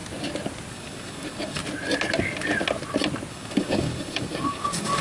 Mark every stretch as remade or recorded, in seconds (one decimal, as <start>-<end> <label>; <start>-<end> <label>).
0.0-0.7 recorded; 0.7-1.6 remade; 1.6-3.3 recorded; 3.3-5.0 remade

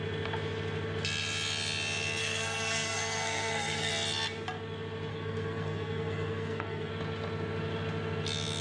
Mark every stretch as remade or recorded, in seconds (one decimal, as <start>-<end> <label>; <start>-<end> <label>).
0.0-2.2 recorded; 2.2-3.9 remade; 3.9-5.1 recorded; 5.1-6.9 remade; 6.9-8.6 recorded